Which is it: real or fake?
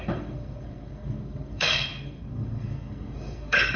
fake